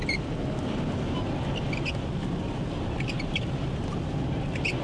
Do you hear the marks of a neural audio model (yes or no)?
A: no